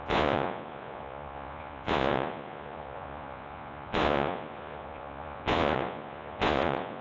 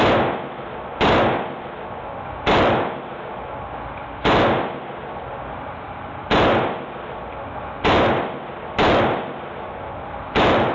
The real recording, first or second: second